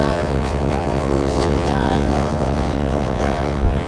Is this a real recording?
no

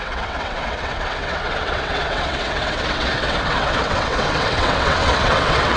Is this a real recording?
no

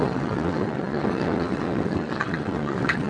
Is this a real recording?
no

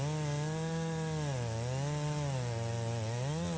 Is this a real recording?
yes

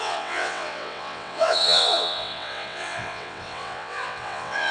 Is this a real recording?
no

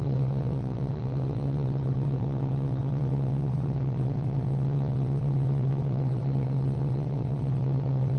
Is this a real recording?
no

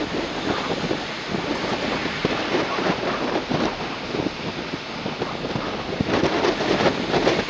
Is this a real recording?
yes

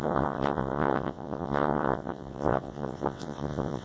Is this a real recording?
no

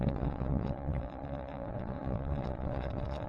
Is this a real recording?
no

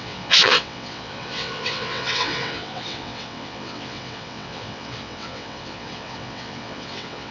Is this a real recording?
no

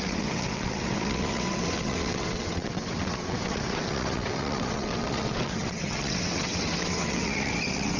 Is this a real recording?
no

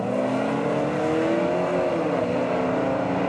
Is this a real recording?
yes